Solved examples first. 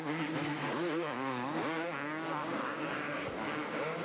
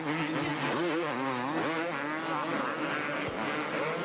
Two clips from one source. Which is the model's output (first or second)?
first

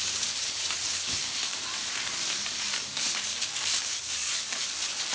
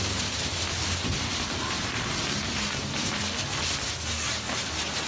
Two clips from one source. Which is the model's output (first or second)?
first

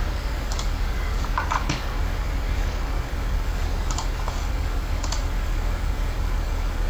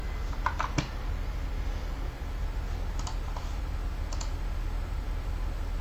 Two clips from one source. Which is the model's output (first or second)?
first